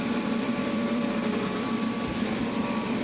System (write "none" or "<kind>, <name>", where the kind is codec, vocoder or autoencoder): vocoder, BigVGAN v2